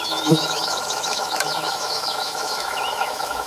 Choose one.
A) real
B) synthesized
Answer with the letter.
B